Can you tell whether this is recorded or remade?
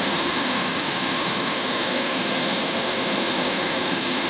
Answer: remade